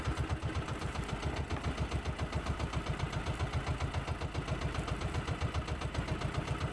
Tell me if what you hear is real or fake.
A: real